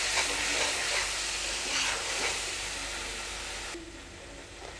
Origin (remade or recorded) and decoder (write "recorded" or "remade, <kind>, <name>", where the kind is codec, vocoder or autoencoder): recorded